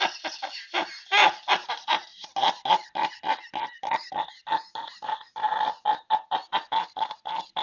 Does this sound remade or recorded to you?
recorded